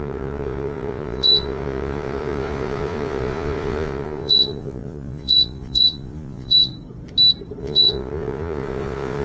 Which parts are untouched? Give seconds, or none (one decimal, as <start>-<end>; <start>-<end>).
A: 6.7-7.6